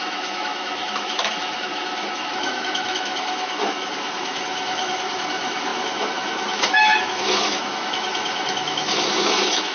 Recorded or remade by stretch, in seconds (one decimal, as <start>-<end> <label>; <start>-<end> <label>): 0.0-9.7 remade